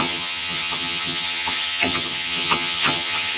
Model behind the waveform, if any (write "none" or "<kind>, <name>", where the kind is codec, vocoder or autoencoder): vocoder, HiFi-GAN